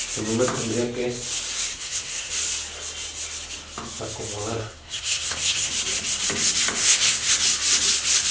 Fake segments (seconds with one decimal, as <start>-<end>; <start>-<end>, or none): 1.7-2.3; 4.6-5.7; 6.8-7.3